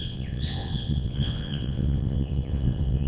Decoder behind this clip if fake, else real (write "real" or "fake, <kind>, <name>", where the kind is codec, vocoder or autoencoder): fake, vocoder, WaveNeXt